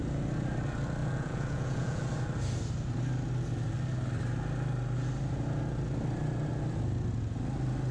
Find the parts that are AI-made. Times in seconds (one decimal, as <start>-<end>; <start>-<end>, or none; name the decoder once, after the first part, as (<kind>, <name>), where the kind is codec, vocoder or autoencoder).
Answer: 1.0-2.0 (vocoder, Vocos)